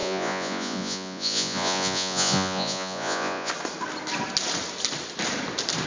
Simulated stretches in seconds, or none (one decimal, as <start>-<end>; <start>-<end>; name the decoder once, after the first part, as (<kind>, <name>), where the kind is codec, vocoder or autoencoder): 0.0-3.5 (vocoder, Vocos)